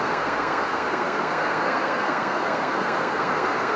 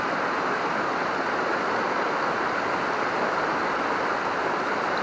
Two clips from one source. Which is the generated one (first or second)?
first